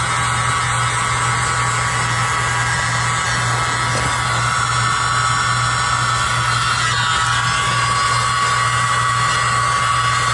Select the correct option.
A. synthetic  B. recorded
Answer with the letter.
B